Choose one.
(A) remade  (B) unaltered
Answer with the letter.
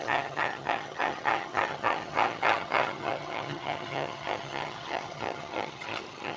A